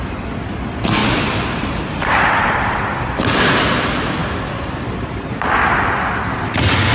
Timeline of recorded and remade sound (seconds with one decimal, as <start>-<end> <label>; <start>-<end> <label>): 0.0-1.0 recorded; 1.0-2.8 remade; 2.8-6.9 recorded